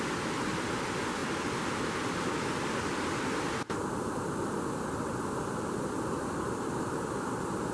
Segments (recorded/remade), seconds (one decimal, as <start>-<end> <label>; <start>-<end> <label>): 0.0-7.7 recorded